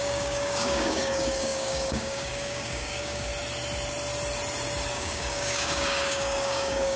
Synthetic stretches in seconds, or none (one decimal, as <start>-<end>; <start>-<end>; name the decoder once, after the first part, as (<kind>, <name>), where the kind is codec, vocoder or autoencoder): 0.0-3.3 (codec, DAC); 4.9-7.0